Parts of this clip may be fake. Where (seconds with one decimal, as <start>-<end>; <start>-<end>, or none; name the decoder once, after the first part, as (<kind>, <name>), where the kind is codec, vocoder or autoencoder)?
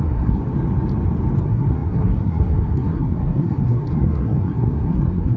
0.0-0.4 (codec, SNAC); 1.4-5.4